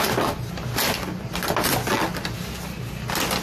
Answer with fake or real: real